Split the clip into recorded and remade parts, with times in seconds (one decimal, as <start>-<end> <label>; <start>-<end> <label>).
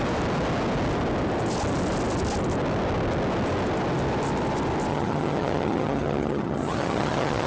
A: 0.0-4.9 recorded; 4.9-7.5 remade